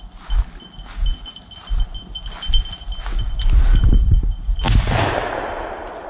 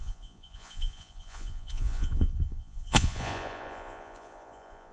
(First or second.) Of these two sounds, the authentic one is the first